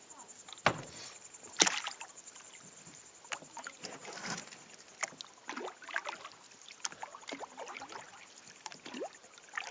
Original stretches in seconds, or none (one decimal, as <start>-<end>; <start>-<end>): 0.0-9.7

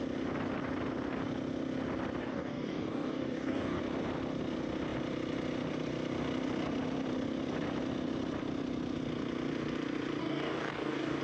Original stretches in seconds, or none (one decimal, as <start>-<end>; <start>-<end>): 0.0-2.2; 3.8-10.2

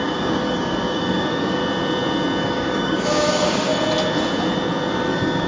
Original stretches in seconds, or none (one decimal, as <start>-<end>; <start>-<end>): 1.6-2.4; 3.7-5.1

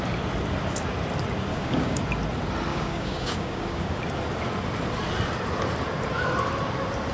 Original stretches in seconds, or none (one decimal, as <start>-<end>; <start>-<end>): 0.0-1.5; 2.0-2.7; 4.0-7.1

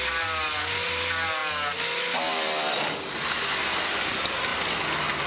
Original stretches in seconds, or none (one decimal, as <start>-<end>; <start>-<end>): 0.0-5.3

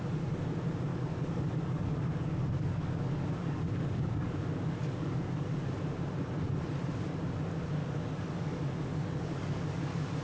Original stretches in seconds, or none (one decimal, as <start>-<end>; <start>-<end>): 0.0-0.9; 5.7-7.8

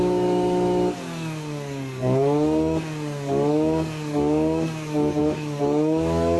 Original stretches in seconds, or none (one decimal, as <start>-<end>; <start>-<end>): none

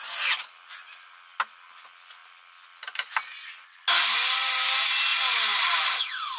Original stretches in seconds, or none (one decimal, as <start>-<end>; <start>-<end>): 0.0-6.4